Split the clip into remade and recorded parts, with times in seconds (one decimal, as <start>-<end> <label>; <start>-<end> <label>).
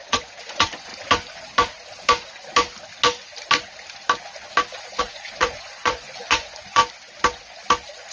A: 0.0-0.9 remade; 0.9-5.0 recorded; 5.0-6.8 remade; 6.8-8.1 recorded